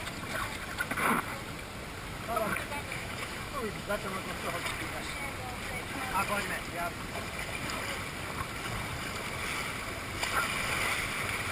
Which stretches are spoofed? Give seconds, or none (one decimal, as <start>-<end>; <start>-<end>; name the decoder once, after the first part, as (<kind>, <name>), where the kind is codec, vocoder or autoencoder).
2.9-4.2 (autoencoder, DAC-VAE)